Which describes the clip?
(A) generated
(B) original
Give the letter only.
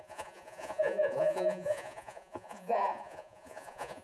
A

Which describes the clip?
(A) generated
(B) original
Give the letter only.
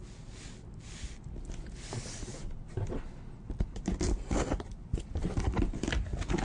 B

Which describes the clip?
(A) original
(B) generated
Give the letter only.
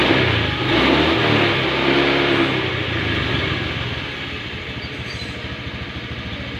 A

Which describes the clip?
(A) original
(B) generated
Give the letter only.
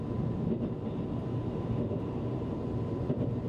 B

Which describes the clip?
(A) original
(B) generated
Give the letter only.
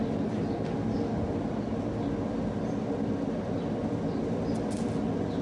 A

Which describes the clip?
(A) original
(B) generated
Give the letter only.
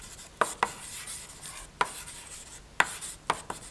A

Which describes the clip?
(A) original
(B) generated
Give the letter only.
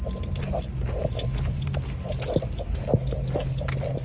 A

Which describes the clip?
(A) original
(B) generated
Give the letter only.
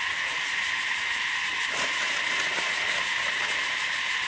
A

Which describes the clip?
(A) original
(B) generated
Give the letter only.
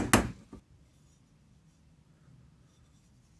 A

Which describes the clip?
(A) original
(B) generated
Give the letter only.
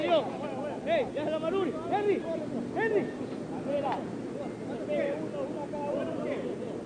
A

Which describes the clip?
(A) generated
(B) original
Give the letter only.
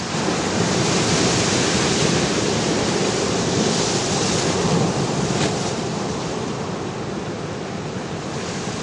A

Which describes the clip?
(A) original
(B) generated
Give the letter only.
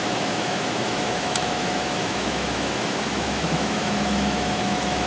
B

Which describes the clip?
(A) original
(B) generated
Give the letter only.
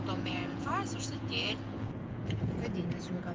B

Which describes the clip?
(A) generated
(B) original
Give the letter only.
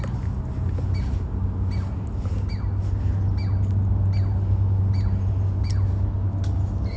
B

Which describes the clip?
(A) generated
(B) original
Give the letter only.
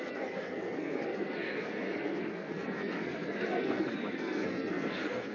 A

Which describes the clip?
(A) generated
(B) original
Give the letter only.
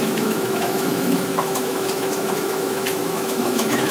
A